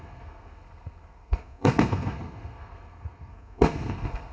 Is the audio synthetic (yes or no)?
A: yes